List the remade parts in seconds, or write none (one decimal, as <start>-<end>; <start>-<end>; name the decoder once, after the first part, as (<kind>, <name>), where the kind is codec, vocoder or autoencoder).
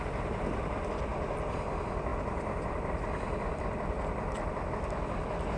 1.1-1.6 (vocoder, BigVGAN v2); 2.1-4.7